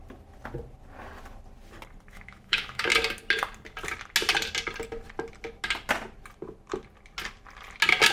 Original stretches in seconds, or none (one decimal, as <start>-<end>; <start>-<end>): 0.0-2.1; 2.9-8.1